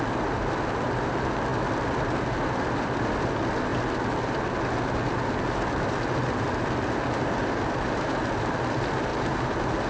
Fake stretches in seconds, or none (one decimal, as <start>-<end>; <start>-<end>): none